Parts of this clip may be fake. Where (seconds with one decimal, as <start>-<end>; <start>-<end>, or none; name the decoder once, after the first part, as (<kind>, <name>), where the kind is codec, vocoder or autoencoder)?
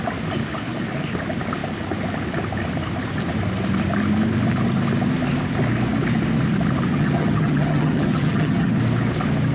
6.9-8.7 (vocoder, HiFi-GAN)